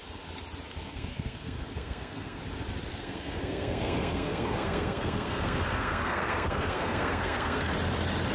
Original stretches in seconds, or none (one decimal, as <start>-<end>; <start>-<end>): 0.0-0.9; 2.4-2.9; 7.7-8.3

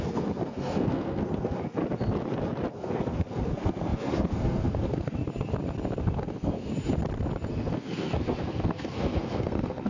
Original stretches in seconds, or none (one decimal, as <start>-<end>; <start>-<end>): 1.8-2.7; 5.2-6.0; 6.7-7.5

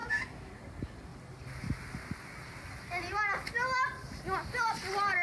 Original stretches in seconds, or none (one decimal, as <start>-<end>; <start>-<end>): 0.5-5.2

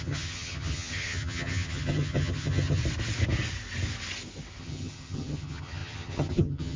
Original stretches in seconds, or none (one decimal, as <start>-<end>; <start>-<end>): 2.8-4.6

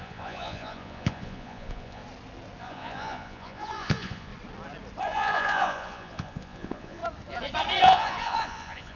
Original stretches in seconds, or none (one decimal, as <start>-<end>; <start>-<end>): 2.0-2.6; 4.3-5.0; 7.0-7.8

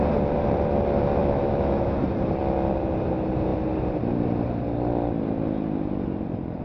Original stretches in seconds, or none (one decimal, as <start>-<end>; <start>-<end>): 0.0-1.2; 2.0-6.6

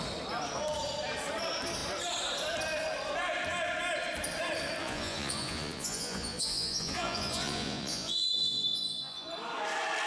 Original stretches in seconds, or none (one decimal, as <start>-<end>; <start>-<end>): 0.0-4.8; 9.3-10.1